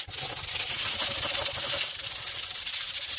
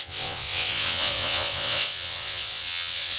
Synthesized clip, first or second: second